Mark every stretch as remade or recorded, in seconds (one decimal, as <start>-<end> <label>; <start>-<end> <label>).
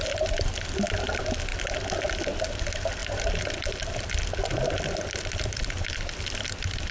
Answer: 0.0-3.0 recorded; 3.0-6.9 remade